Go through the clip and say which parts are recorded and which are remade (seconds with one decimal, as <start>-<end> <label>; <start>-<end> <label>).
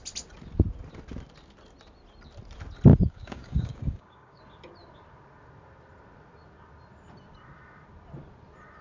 0.0-2.9 recorded; 2.9-4.4 remade; 4.4-8.8 recorded